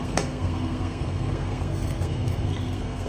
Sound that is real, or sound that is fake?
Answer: fake